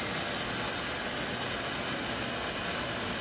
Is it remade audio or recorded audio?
recorded